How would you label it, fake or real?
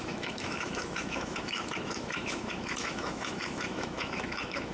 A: fake